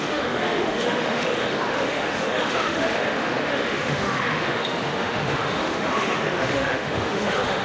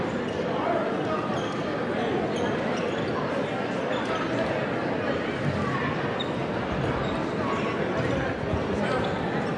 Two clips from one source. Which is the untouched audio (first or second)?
second